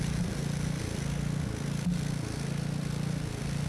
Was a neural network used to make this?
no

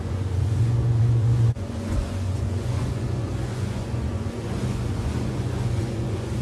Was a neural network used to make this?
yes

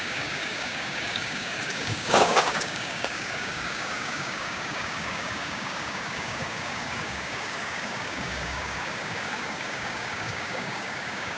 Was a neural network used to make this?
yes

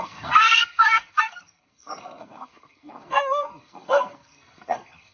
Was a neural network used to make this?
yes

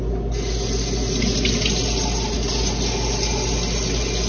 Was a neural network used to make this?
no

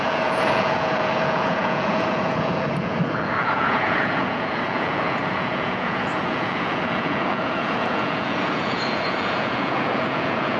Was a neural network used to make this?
yes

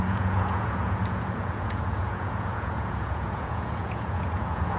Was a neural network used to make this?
yes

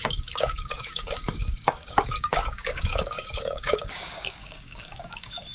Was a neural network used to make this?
yes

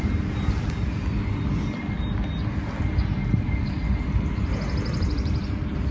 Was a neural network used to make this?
no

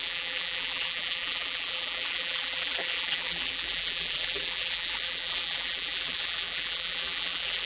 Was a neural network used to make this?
yes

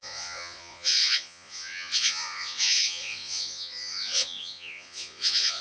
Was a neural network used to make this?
yes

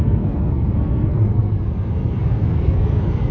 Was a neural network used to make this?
yes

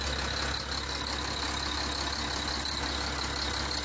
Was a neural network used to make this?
no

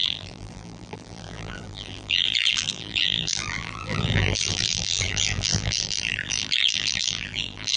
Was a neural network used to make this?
yes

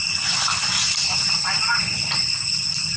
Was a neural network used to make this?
no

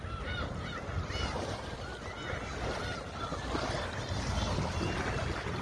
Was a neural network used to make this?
no